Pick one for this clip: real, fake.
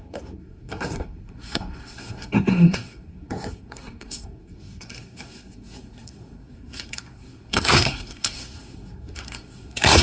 fake